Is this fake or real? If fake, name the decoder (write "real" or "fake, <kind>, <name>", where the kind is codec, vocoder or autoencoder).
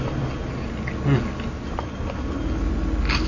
real